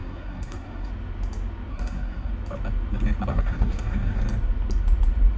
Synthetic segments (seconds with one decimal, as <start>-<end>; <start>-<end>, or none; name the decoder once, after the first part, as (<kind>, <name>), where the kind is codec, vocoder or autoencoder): 0.0-0.9 (codec, SNAC); 1.7-2.3; 3.3-4.2